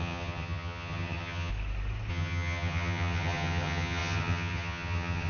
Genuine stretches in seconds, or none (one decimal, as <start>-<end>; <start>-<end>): 1.5-2.1